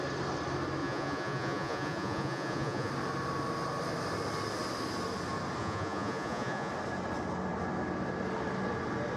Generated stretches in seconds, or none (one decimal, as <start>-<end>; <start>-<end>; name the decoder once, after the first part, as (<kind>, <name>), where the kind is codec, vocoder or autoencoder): 0.8-2.9 (vocoder, Vocos); 5.6-6.7